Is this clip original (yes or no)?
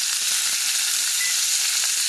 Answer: yes